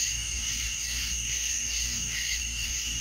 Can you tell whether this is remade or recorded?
remade